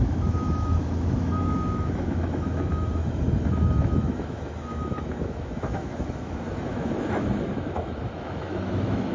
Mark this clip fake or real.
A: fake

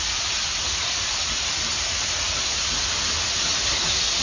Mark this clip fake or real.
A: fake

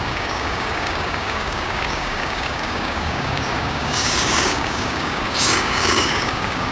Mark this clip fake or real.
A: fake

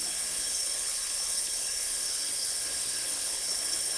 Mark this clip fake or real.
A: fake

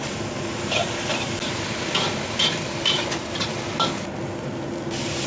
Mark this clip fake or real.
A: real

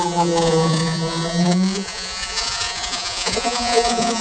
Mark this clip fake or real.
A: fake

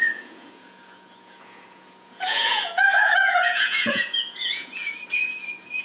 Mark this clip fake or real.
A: fake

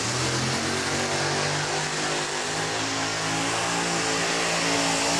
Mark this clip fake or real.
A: real